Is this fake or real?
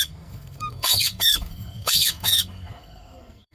fake